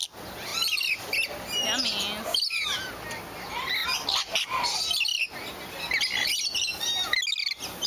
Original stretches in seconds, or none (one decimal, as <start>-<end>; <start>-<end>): 0.0-7.9